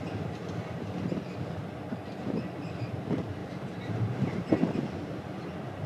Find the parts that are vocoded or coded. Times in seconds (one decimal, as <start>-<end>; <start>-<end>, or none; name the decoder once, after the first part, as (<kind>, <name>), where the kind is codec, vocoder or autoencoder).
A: 3.4-4.5 (vocoder, BigVGAN v2)